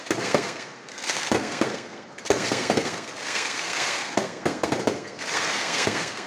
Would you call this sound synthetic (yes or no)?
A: yes